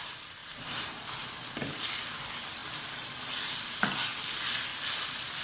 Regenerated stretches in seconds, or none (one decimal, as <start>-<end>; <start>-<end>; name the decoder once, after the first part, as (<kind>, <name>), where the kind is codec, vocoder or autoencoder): 0.4-2.2 (vocoder, BigVGAN v2)